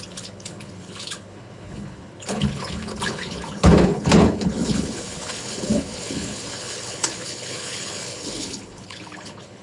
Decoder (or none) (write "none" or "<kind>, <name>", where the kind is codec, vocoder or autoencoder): codec, HILCodec